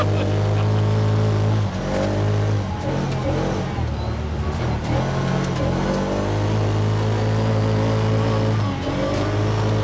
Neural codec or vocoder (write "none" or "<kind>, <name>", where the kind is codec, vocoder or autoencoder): none